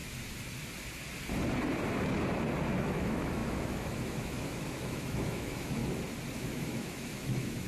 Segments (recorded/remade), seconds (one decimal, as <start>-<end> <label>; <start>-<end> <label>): 0.0-2.8 recorded; 2.8-5.8 remade; 5.8-6.4 recorded; 6.4-7.7 remade